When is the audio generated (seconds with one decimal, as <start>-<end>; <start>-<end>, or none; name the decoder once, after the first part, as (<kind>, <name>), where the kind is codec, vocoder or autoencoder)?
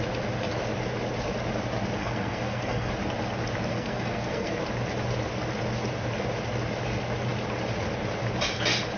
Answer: 2.0-2.9 (codec, SNAC); 3.7-4.6